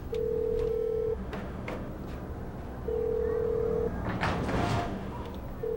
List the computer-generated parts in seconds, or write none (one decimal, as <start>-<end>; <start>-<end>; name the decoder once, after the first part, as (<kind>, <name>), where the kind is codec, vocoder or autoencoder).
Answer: 0.7-1.9 (autoencoder, DAC-VAE); 4.6-5.3